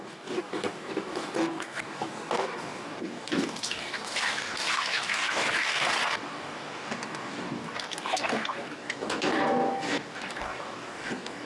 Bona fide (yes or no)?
no